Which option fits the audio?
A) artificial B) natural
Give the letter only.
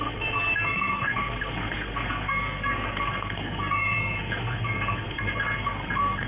A